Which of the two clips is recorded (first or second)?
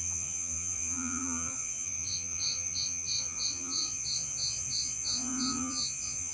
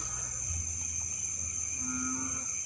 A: second